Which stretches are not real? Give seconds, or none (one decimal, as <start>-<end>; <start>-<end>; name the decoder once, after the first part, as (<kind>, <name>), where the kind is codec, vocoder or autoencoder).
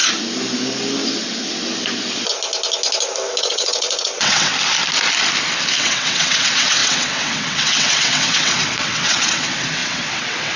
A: 3.4-4.5 (vocoder, WaveNeXt); 5.8-10.6